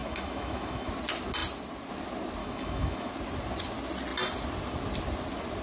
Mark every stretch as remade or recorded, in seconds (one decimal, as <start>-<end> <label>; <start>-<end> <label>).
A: 0.0-0.9 remade; 0.9-2.4 recorded; 2.4-3.1 remade; 3.1-5.6 recorded